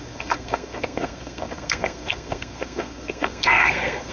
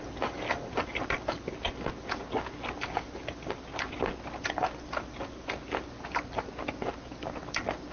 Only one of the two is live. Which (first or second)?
second